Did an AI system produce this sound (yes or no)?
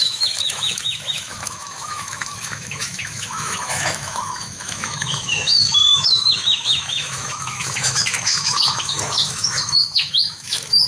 yes